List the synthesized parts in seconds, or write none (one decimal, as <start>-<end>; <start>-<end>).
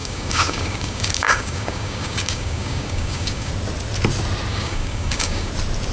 0.0-3.5; 4.5-5.5